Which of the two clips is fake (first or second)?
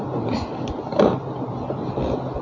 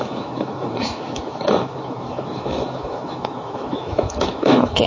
second